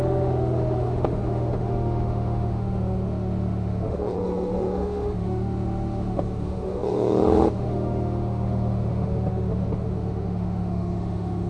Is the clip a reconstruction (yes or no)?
yes